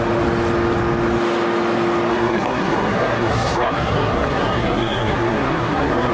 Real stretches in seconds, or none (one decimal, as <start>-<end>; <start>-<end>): 0.0-2.1